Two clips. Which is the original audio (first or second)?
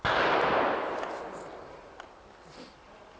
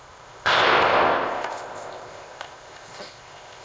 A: first